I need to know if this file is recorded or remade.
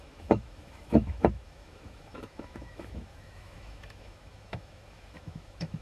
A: remade